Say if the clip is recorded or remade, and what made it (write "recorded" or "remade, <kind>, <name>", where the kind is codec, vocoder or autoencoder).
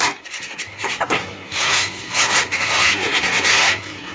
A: remade, codec, SNAC